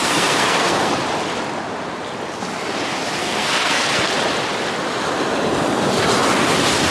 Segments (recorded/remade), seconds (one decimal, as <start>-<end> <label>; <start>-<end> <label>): 0.0-0.9 remade; 0.9-3.2 recorded; 3.2-4.1 remade; 4.1-6.9 recorded